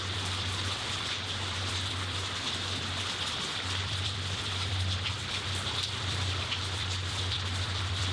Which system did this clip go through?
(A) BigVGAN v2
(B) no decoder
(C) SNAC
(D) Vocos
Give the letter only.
A